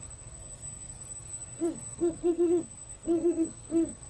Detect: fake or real fake